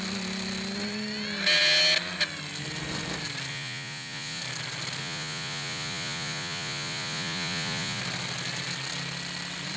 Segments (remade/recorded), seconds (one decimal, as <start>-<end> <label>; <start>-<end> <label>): 0.0-3.5 recorded; 3.5-4.4 remade; 4.4-5.0 recorded; 5.0-8.0 remade; 8.0-9.8 recorded